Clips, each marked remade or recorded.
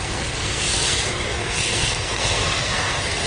remade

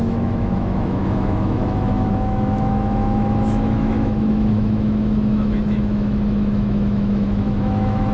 remade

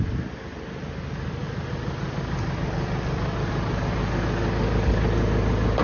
recorded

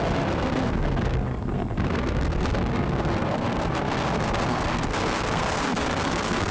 remade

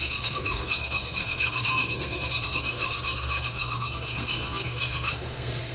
remade